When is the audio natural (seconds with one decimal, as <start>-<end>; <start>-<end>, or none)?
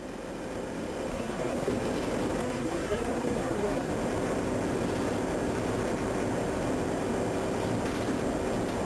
0.0-1.1; 1.7-2.4; 3.9-8.9